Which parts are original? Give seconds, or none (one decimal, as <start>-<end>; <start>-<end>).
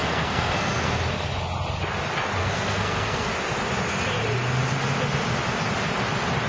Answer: 1.0-2.4; 3.3-6.5